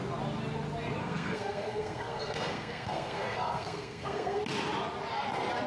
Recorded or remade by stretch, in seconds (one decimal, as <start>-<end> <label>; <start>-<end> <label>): 0.0-1.0 recorded; 1.0-4.4 remade; 4.4-5.7 recorded